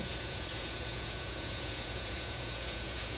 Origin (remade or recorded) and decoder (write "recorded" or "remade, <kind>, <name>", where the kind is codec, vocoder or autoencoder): remade, vocoder, Vocos